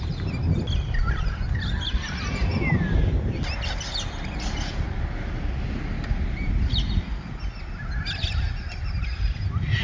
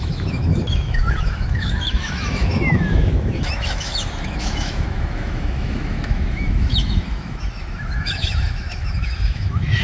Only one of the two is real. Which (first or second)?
first